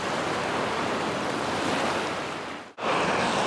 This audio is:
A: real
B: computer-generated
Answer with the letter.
A